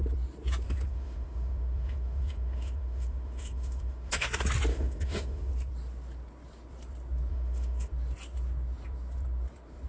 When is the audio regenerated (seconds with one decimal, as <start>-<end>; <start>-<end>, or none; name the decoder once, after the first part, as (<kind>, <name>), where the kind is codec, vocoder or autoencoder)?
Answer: 0.9-4.3 (autoencoder, DAC-VAE); 4.7-5.5; 7.3-7.9